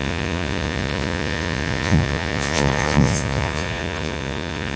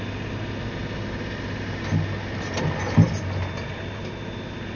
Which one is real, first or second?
second